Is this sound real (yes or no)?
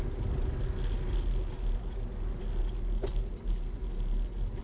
yes